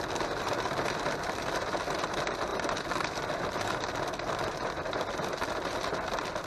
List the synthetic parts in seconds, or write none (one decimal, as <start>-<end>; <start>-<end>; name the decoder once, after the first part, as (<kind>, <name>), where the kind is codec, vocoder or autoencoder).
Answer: none